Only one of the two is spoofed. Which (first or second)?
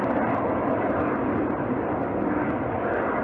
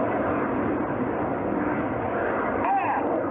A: first